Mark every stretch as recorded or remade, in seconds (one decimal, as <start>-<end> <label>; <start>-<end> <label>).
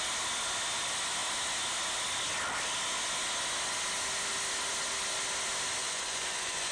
0.0-5.8 recorded; 5.8-6.7 remade